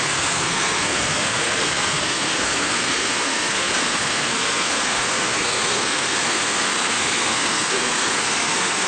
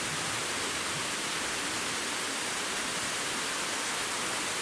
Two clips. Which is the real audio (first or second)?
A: second